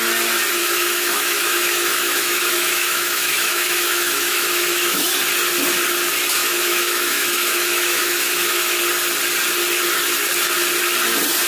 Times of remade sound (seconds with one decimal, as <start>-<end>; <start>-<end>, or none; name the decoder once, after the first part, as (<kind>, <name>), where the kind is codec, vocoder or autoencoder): 0.6-5.0 (autoencoder, DAC-VAE); 6.4-8.8